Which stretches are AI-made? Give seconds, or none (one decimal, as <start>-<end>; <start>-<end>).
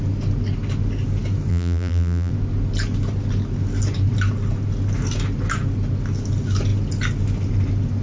1.5-2.3